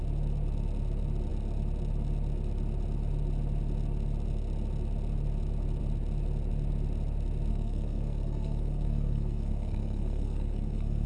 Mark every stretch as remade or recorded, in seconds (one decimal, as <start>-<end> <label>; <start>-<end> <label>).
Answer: 0.0-7.5 recorded; 7.5-11.1 remade